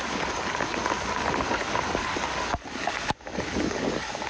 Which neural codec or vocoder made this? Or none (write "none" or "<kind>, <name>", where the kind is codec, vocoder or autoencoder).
codec, DAC